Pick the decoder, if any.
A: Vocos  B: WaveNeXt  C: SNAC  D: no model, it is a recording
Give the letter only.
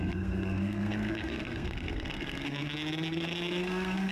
C